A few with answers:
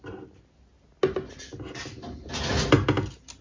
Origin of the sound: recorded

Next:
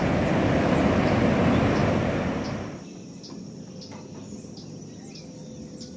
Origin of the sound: recorded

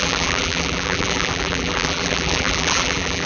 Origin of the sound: remade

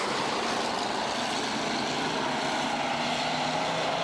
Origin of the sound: recorded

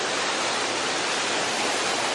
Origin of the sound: recorded